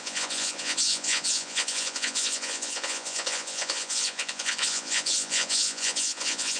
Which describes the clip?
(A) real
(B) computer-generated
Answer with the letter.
B